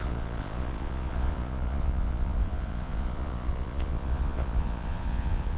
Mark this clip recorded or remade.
remade